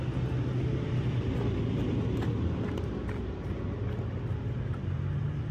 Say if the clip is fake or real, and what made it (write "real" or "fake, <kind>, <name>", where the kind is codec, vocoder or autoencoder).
real